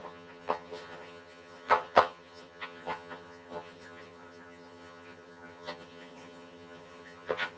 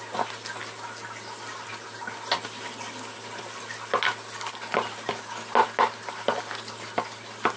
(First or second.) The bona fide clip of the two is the second